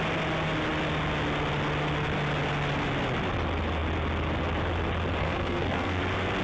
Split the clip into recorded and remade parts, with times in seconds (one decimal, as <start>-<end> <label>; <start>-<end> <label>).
0.0-5.2 recorded; 5.2-6.0 remade; 6.0-6.4 recorded